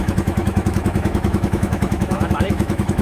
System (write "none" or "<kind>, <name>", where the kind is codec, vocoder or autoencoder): autoencoder, DAC-VAE